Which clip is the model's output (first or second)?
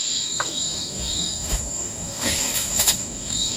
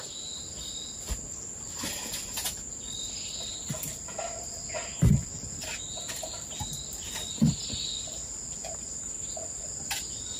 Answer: first